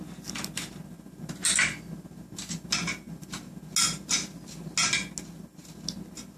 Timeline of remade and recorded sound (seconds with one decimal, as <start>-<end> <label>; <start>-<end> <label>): 0.0-6.4 recorded